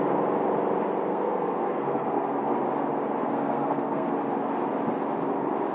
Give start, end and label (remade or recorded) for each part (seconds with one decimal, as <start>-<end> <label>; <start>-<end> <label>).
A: 0.0-1.1 recorded; 1.1-2.6 remade; 2.6-3.2 recorded; 3.2-4.2 remade; 4.2-5.7 recorded